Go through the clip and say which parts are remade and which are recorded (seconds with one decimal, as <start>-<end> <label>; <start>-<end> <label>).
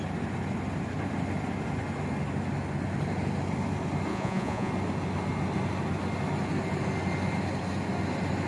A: 0.0-4.1 recorded; 4.1-4.7 remade; 4.7-8.5 recorded